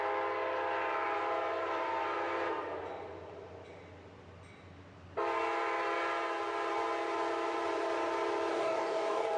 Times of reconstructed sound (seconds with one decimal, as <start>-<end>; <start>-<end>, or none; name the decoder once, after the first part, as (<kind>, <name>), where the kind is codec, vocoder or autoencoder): 8.5-9.4 (codec, DAC)